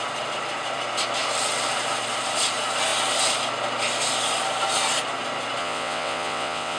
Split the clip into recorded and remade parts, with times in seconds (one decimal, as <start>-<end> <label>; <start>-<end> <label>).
0.0-5.6 recorded; 5.6-6.8 remade